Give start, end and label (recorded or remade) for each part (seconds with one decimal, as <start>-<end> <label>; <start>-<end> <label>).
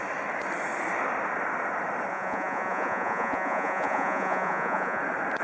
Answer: 0.0-2.1 recorded; 2.1-5.0 remade; 5.0-5.4 recorded